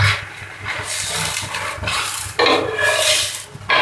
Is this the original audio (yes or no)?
yes